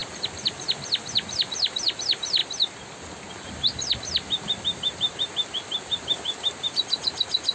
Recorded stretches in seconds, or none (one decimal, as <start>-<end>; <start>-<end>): 0.0-7.5